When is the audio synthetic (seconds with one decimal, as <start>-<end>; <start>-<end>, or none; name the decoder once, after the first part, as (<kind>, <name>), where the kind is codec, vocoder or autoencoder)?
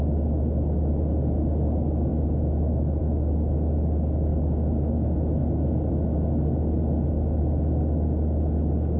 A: none